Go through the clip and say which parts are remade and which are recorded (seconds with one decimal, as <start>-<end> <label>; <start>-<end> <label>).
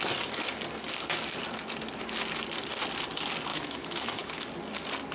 0.0-3.5 recorded; 3.5-4.5 remade; 4.5-5.1 recorded